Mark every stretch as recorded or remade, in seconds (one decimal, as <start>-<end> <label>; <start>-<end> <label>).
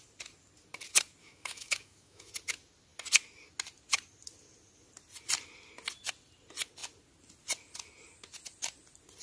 0.0-1.2 recorded; 1.2-2.3 remade; 2.3-9.2 recorded